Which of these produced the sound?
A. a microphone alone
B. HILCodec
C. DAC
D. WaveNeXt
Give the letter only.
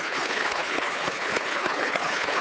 B